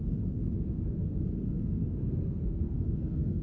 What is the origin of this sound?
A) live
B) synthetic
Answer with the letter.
B